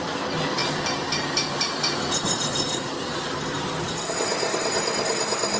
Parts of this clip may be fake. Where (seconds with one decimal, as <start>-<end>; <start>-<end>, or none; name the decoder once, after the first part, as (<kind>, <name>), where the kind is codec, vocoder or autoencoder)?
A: none